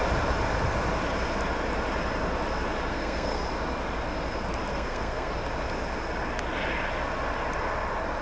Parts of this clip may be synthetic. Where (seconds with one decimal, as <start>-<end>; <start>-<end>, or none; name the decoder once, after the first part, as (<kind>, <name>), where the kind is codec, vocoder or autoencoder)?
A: 2.9-3.4 (codec, SNAC); 4.7-5.3